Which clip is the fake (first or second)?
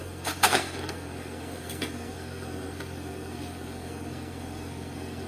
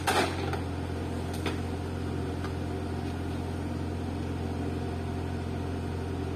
first